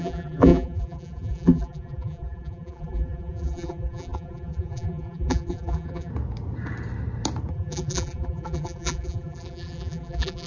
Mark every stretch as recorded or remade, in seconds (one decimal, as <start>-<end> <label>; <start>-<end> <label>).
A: 0.0-6.1 remade; 6.1-7.5 recorded; 7.5-10.5 remade

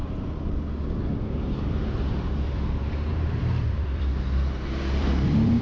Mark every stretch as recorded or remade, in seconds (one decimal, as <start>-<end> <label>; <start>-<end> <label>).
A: 0.0-3.1 recorded; 3.1-5.6 remade

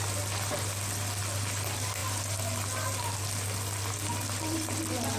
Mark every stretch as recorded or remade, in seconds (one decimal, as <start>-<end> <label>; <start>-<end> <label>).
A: 0.0-5.2 recorded